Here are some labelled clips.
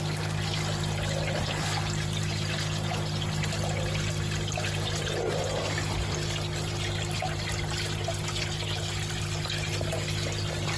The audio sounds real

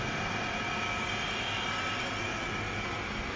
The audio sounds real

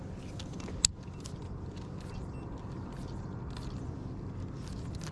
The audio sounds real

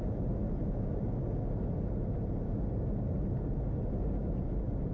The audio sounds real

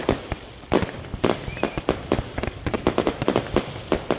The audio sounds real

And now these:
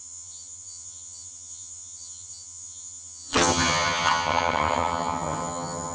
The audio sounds fake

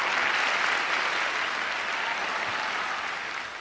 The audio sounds real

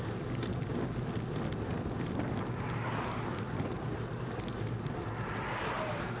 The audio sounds real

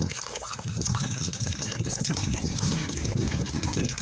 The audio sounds fake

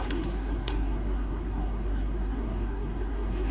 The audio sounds fake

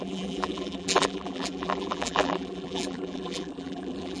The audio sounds fake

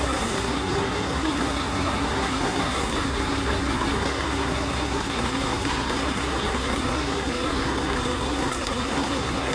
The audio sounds fake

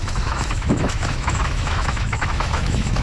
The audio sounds fake